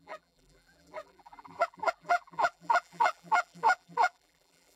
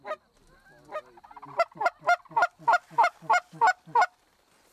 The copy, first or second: first